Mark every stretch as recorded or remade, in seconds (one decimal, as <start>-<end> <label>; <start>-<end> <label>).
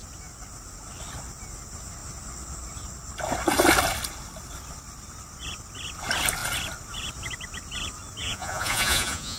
0.0-8.2 recorded; 8.2-9.4 remade